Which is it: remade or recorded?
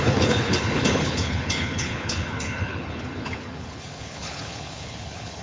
remade